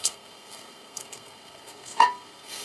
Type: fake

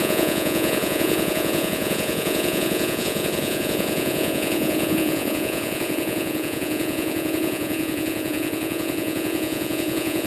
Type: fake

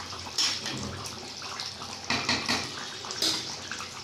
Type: fake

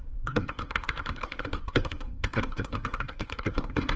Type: fake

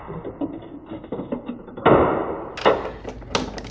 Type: real